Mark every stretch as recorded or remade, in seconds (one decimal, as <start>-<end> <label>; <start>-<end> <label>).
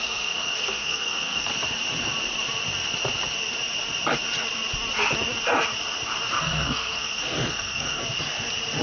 0.0-1.5 remade; 1.5-6.4 recorded; 6.4-8.0 remade; 8.0-8.8 recorded